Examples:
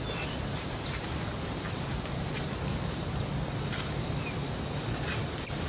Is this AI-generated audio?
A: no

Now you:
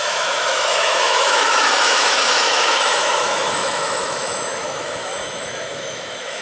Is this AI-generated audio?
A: yes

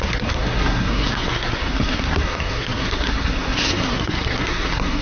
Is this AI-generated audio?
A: yes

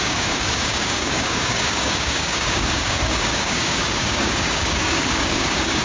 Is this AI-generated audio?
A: yes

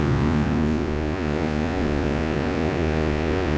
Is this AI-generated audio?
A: yes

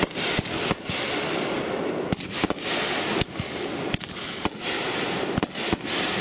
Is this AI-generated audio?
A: no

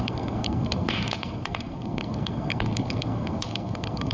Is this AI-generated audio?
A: yes